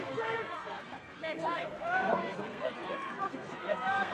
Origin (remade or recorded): remade